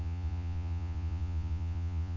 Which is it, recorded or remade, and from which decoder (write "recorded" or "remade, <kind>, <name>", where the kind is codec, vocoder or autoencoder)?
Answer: remade, vocoder, Vocos